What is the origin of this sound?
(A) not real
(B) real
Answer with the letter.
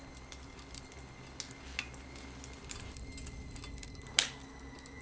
B